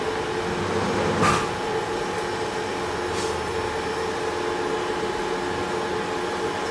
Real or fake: real